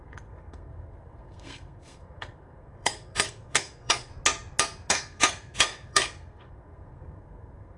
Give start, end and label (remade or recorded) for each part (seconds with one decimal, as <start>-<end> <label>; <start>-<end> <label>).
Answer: 0.0-4.1 remade; 4.1-4.9 recorded; 4.9-7.8 remade